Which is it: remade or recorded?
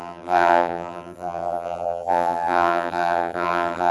remade